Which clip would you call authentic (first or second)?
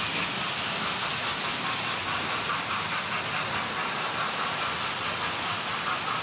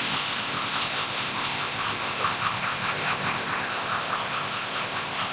first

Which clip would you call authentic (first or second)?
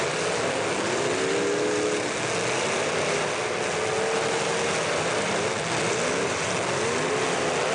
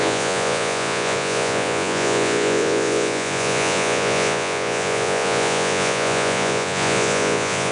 first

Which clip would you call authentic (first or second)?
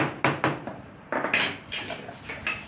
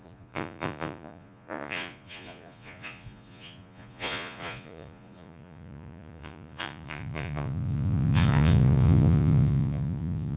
first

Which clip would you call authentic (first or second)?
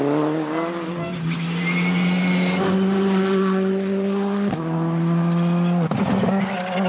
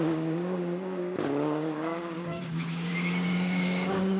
first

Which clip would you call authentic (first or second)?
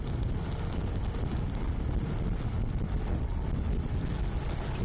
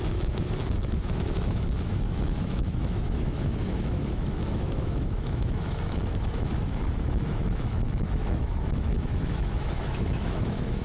first